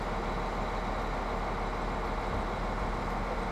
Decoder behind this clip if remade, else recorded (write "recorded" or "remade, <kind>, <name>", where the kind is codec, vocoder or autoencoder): recorded